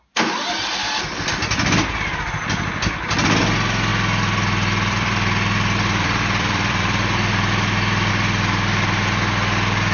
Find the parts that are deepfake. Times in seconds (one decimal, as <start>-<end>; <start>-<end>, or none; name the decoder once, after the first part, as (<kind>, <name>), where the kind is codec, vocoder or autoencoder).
3.9-8.1 (vocoder, BigVGAN v2)